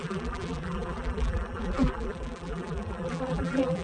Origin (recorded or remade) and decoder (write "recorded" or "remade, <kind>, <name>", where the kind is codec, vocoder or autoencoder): remade, vocoder, BigVGAN v2